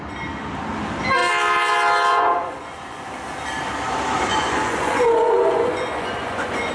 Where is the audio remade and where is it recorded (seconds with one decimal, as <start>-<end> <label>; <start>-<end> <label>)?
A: 0.0-2.1 recorded; 2.1-3.1 remade; 3.1-4.3 recorded; 4.3-6.7 remade